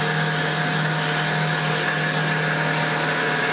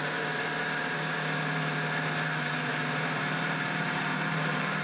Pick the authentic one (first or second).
first